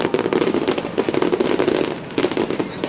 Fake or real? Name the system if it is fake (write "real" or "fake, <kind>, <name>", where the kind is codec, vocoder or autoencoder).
real